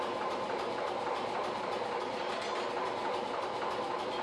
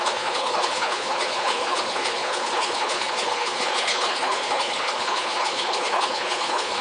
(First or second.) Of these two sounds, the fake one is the second